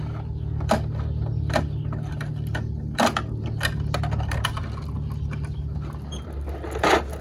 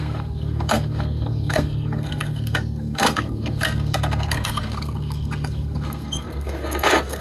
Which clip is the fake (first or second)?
second